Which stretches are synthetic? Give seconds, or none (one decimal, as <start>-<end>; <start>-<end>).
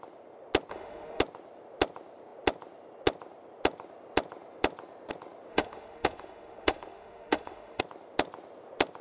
0.7-1.2; 5.5-7.8